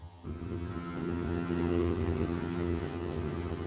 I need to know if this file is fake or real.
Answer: fake